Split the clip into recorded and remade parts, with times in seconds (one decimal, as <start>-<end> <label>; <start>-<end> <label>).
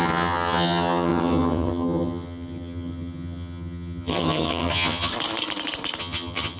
0.0-5.1 remade; 5.1-6.0 recorded; 6.0-6.6 remade